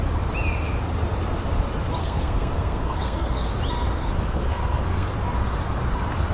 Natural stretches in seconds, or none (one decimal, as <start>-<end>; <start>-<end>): 0.0-2.0; 3.4-4.0; 5.1-6.3